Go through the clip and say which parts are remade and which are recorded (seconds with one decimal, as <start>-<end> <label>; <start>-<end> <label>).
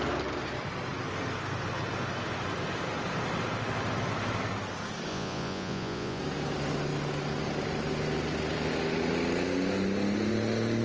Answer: 0.0-5.1 recorded; 5.1-6.2 remade; 6.2-10.8 recorded